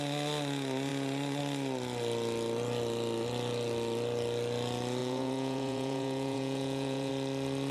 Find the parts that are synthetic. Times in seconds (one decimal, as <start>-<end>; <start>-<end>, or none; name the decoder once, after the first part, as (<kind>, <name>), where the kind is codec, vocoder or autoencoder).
5.0-7.1 (vocoder, Vocos)